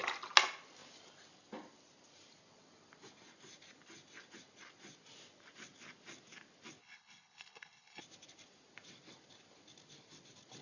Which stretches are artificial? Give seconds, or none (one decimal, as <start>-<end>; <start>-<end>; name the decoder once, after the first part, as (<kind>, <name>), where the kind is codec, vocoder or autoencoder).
6.8-8.0 (codec, HILCodec)